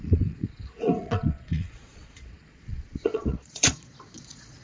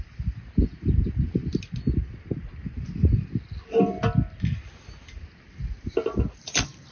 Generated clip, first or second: first